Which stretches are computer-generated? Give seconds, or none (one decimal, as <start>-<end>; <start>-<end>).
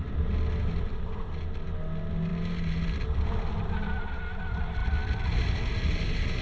none